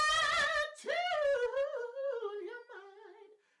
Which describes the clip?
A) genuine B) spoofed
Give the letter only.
B